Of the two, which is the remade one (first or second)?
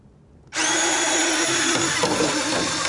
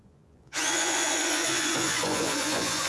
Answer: second